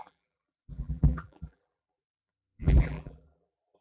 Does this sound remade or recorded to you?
remade